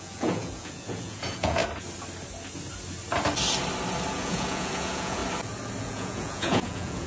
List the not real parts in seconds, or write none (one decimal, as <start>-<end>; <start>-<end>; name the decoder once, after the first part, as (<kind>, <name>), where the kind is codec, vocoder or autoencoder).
0.0-1.6 (vocoder, Vocos); 4.1-5.2; 5.8-7.1